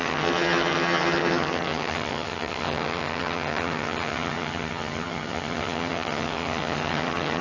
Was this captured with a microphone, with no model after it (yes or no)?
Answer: no